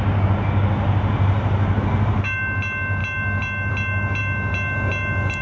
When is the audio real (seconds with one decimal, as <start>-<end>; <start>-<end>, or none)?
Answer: 0.0-5.4